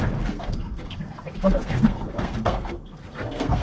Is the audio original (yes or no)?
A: no